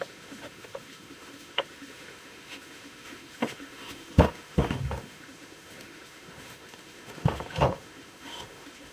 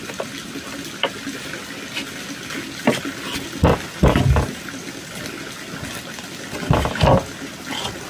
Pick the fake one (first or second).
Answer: first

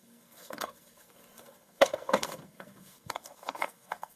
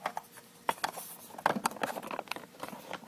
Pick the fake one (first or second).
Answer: first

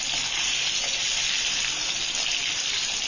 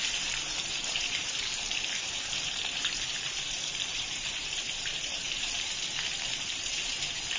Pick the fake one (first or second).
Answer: second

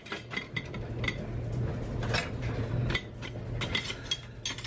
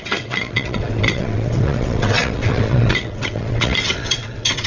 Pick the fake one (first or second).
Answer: second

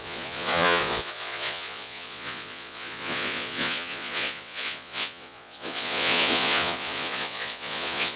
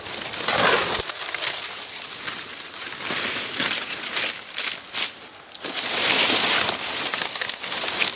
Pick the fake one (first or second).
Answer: first